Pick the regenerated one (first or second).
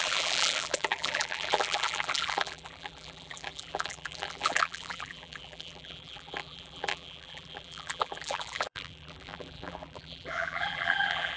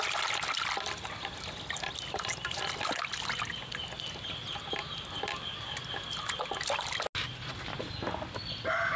first